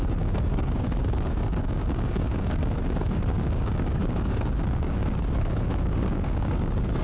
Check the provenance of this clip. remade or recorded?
remade